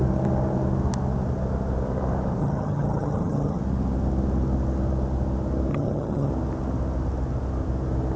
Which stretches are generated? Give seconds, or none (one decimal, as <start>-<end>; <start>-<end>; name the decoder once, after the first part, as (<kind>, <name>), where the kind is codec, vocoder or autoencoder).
2.4-3.6 (vocoder, HiFi-GAN); 5.7-6.3